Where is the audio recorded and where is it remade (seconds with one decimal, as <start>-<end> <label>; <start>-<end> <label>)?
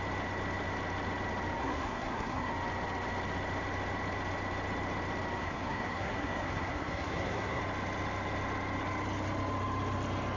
0.0-1.6 recorded; 1.6-2.5 remade; 2.5-5.4 recorded; 5.4-7.6 remade; 7.6-10.4 recorded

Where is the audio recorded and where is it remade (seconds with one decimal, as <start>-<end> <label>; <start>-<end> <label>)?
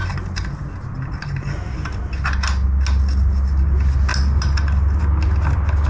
0.0-5.9 recorded